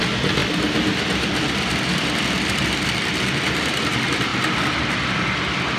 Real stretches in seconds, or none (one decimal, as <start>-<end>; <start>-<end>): 0.0-0.4; 3.9-5.8